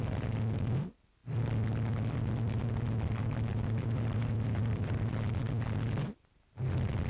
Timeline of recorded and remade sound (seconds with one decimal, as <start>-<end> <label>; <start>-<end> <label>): 0.0-3.5 recorded; 3.5-5.1 remade; 5.1-7.1 recorded